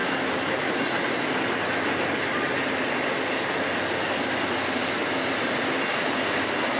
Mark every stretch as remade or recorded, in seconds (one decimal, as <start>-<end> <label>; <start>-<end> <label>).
0.0-6.8 recorded